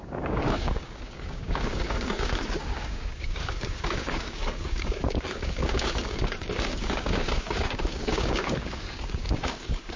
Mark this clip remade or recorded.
remade